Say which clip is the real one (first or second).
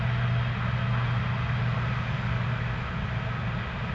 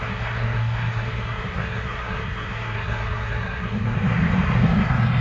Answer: first